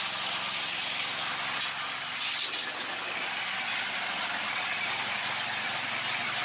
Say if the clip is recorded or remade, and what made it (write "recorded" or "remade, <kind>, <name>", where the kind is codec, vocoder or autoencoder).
recorded